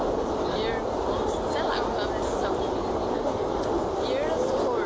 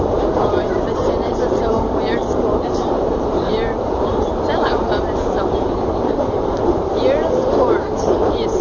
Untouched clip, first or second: first